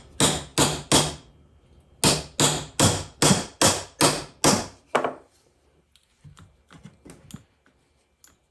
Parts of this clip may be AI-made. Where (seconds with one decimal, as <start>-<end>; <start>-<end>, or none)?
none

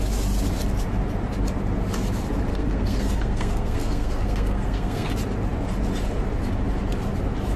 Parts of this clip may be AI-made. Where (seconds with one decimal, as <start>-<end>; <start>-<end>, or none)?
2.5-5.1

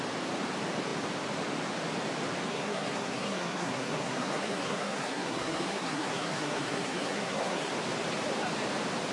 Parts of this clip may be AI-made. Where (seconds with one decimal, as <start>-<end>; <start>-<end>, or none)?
2.5-7.7